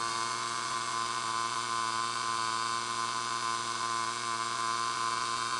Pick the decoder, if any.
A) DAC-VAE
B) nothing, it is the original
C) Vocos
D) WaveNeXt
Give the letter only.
C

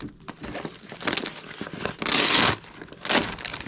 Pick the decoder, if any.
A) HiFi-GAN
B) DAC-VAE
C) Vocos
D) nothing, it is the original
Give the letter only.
D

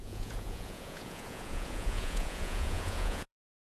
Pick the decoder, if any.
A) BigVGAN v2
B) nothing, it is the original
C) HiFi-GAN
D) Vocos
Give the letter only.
D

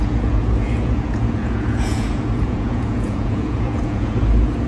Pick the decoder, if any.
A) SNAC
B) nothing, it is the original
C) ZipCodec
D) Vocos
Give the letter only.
D